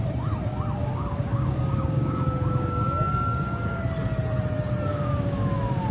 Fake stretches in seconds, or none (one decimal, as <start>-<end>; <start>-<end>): 0.8-3.8; 4.9-5.9